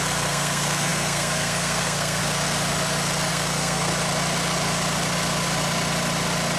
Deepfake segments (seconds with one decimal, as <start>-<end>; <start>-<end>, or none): 0.0-2.2; 3.3-3.9